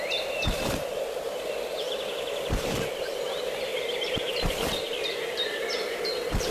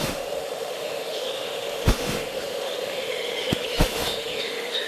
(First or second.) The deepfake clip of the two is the second